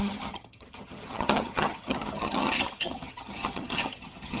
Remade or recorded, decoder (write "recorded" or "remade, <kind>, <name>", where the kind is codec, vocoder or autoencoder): remade, vocoder, HiFi-GAN